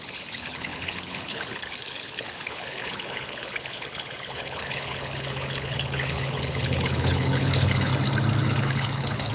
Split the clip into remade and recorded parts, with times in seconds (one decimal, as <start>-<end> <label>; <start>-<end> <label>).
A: 0.0-7.9 remade; 7.9-8.4 recorded; 8.4-9.3 remade